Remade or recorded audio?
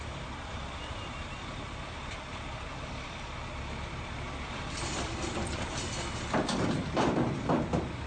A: remade